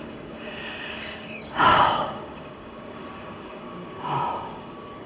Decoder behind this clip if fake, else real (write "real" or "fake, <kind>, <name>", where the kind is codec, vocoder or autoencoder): fake, codec, DAC